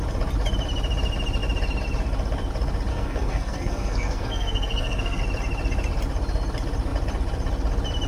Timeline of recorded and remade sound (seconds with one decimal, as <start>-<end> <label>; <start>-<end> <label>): 0.0-2.9 recorded; 2.9-5.2 remade; 5.2-8.1 recorded